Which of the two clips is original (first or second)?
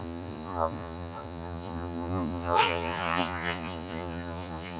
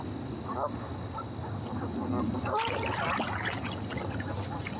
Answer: second